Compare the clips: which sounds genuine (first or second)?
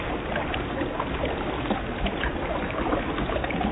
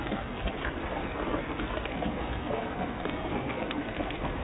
first